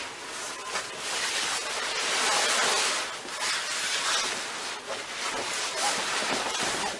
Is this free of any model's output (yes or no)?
yes